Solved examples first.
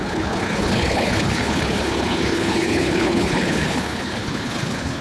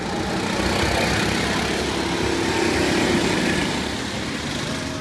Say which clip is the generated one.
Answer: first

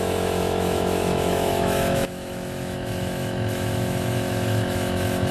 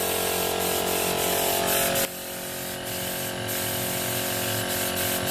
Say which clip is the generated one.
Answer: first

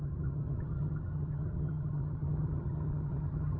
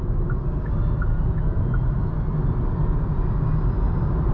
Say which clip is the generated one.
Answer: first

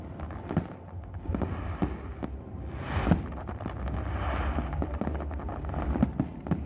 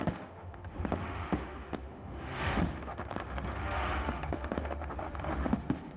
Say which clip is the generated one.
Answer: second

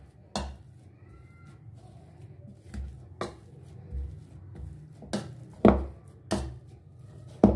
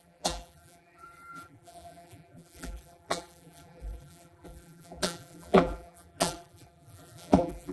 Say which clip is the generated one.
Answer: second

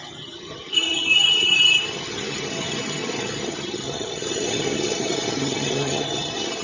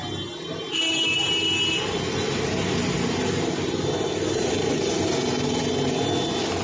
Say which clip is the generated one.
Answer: first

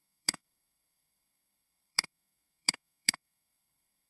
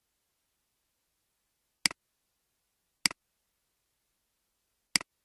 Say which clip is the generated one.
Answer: first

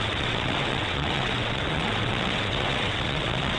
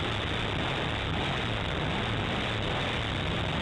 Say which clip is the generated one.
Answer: first